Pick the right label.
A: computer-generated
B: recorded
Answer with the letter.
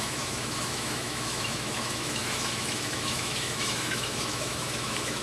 A